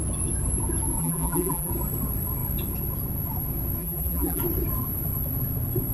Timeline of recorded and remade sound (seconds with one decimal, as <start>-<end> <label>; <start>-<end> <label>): 0.0-1.0 recorded; 1.0-1.7 remade; 1.7-3.8 recorded; 3.8-4.4 remade; 4.4-5.9 recorded